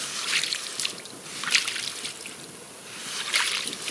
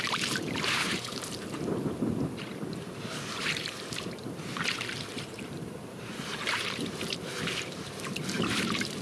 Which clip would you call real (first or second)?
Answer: first